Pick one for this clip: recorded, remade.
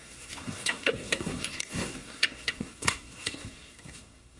remade